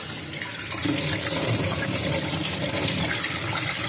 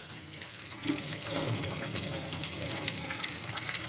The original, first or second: first